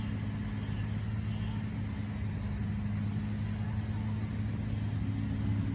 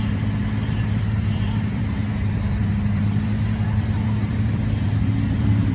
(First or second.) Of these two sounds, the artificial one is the second